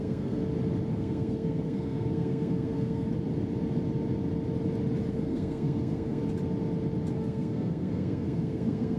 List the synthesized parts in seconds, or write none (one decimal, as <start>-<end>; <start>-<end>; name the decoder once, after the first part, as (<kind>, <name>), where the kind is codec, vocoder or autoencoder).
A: 0.0-0.4 (codec, SNAC); 0.9-3.1; 5.1-6.2; 7.1-9.0